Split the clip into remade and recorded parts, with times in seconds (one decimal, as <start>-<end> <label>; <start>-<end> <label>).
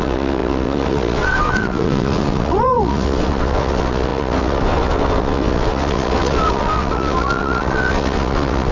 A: 0.0-8.7 remade